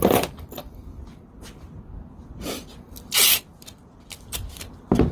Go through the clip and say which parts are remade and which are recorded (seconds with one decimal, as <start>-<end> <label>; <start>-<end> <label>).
0.0-3.8 recorded; 3.8-5.1 remade